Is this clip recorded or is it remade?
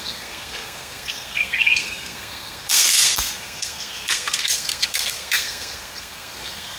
remade